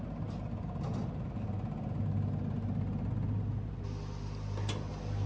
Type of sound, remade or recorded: recorded